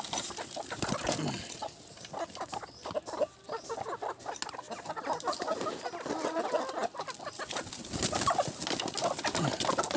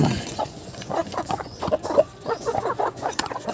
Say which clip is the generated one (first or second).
second